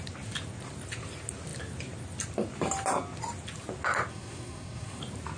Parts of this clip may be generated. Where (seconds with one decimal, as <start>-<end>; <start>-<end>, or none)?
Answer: 4.1-5.0